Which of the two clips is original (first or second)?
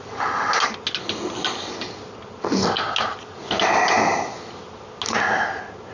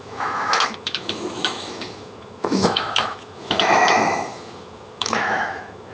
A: first